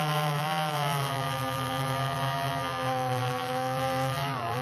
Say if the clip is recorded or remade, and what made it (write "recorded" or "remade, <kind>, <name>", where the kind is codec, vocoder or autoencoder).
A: remade, vocoder, BigVGAN v2